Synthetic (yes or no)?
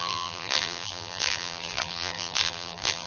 yes